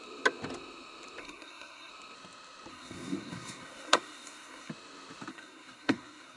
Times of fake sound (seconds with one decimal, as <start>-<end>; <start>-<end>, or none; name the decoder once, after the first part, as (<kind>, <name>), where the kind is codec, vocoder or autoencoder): 1.2-1.9 (codec, SNAC); 2.7-4.7; 5.3-6.4